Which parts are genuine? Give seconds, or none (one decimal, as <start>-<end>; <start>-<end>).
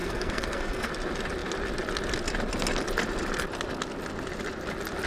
0.9-5.1